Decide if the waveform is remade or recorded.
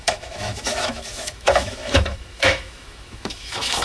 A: remade